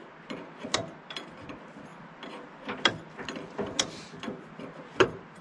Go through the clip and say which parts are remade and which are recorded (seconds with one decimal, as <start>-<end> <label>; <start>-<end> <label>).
0.0-5.4 recorded